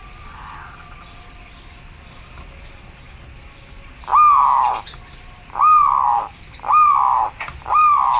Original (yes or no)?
yes